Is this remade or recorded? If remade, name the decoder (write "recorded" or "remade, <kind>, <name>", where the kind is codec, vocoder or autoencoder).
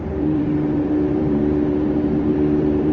remade, vocoder, BigVGAN v2